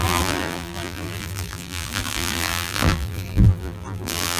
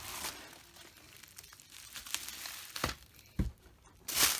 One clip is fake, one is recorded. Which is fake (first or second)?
first